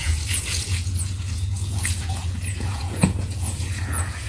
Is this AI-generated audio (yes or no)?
yes